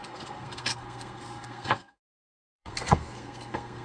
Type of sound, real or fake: fake